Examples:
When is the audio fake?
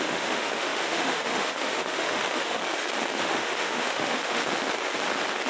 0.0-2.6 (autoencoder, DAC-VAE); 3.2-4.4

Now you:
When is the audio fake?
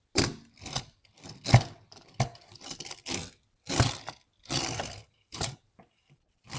5.0-6.6 (vocoder, BigVGAN v2)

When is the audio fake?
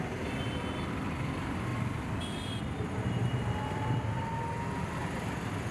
none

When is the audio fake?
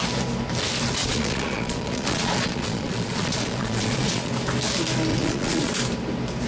1.0-4.3 (vocoder, Vocos); 5.1-5.7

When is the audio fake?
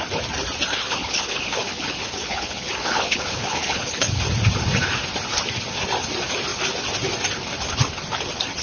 0.7-4.2 (codec, HILCodec)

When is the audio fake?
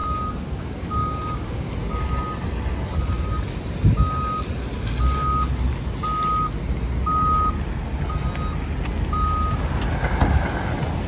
0.0-1.7 (codec, DAC)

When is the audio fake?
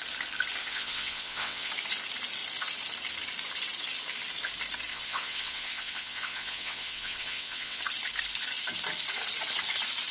0.6-1.7 (vocoder, WaveNeXt); 4.9-7.8